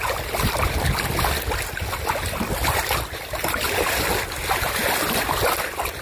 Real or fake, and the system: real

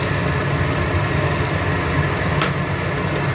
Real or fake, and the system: real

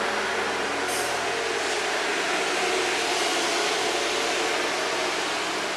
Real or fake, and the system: real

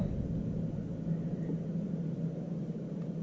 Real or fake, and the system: real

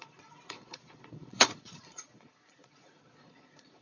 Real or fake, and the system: fake, vocoder, Vocos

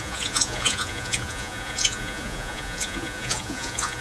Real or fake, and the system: fake, vocoder, Vocos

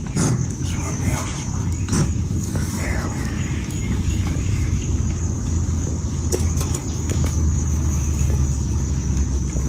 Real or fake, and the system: fake, codec, DAC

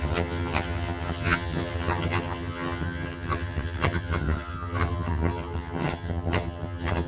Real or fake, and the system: fake, vocoder, HiFi-GAN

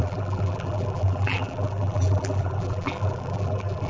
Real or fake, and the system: fake, vocoder, BigVGAN v2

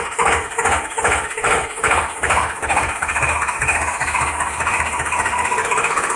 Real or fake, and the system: fake, autoencoder, DAC-VAE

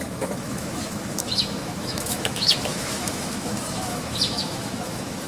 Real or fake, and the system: fake, autoencoder, DAC-VAE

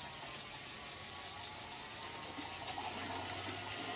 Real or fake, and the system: real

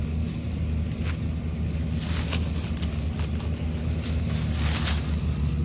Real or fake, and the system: real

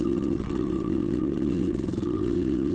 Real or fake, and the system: fake, vocoder, WaveNeXt